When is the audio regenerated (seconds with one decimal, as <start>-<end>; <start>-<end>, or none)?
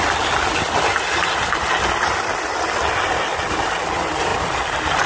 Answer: none